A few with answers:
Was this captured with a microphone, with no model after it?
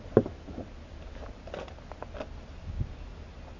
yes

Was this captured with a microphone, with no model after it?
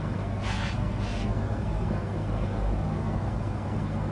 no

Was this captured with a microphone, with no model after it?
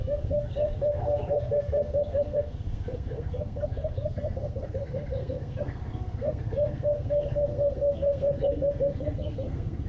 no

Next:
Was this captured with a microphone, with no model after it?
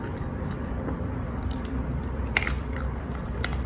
no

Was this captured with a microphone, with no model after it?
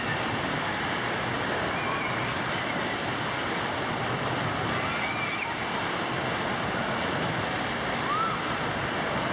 yes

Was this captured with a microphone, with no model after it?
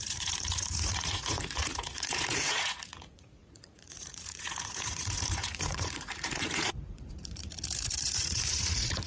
no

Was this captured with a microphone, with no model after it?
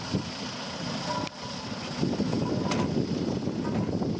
yes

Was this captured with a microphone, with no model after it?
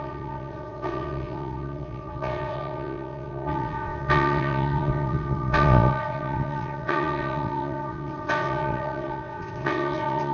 no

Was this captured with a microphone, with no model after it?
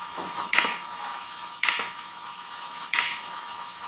no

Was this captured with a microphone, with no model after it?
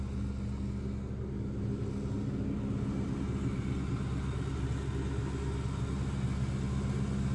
yes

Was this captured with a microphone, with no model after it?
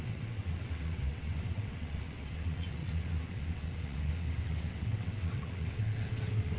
no